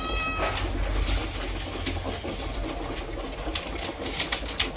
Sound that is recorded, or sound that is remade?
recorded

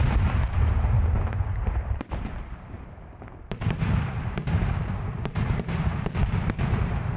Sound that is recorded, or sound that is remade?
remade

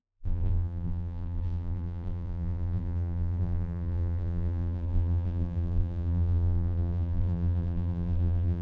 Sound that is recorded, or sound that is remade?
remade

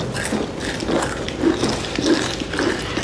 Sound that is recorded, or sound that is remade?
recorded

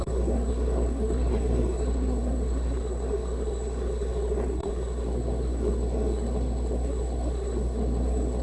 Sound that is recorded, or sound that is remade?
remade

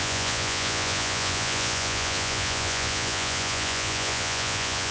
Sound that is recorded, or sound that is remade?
remade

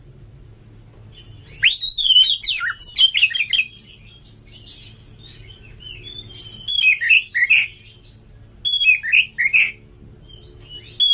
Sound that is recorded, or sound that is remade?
recorded